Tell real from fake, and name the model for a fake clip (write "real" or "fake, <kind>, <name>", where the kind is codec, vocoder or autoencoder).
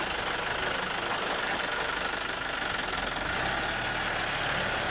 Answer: real